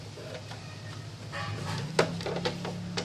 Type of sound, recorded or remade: recorded